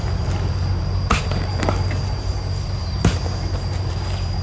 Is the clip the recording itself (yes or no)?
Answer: no